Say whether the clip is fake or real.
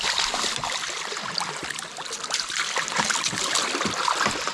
real